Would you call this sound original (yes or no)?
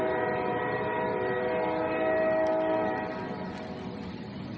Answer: yes